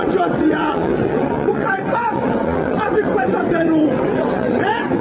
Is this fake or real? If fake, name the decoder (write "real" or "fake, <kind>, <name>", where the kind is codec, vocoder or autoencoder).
fake, vocoder, WaveNeXt